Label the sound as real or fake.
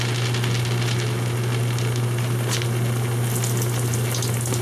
real